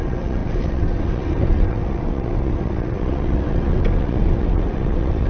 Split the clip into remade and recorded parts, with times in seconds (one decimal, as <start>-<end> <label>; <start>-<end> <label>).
0.0-5.3 remade